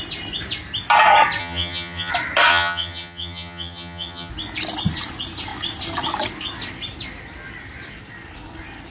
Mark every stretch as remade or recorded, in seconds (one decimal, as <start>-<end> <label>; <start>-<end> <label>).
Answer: 0.0-1.4 recorded; 1.4-2.1 remade; 2.1-2.5 recorded; 2.5-4.3 remade; 4.3-8.9 recorded